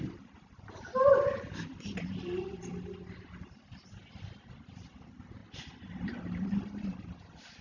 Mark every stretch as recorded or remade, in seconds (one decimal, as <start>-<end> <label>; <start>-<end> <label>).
0.0-2.7 remade; 2.7-5.0 recorded; 5.0-5.4 remade; 5.4-7.6 recorded